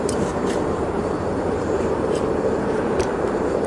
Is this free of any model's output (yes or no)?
no